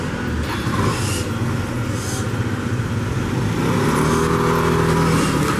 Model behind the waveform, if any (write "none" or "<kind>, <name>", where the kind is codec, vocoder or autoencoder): none